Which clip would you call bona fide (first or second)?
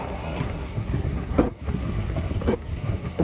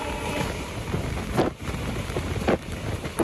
second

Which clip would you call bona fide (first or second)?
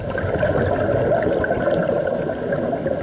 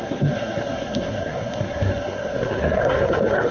first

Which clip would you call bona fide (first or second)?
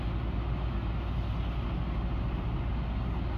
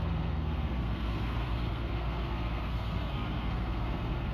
first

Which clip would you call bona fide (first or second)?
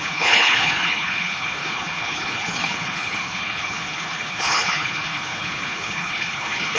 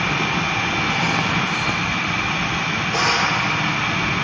second